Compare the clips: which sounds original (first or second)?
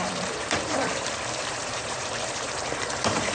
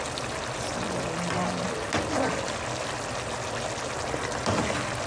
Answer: second